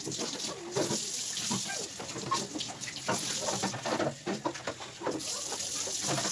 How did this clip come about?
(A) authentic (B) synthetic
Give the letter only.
A